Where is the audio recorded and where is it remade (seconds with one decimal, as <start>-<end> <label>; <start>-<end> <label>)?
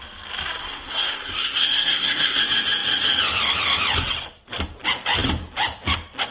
0.0-0.6 recorded; 0.6-2.4 remade; 2.4-6.3 recorded